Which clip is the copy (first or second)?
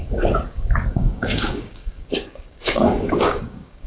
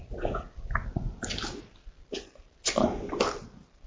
first